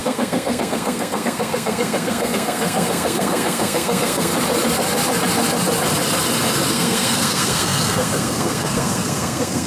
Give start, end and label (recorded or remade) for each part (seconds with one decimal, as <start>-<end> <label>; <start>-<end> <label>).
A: 0.0-4.3 remade; 4.3-6.7 recorded; 6.7-9.7 remade